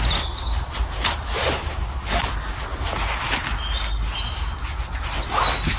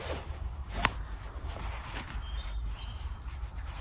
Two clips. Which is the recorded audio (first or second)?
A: first